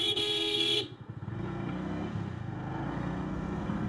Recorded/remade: remade